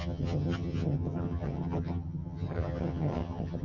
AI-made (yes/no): yes